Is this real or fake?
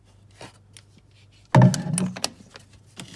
real